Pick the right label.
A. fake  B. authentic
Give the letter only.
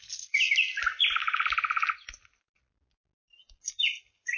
B